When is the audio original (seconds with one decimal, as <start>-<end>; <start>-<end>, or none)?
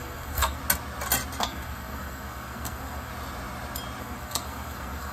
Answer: 0.6-1.4; 3.1-4.0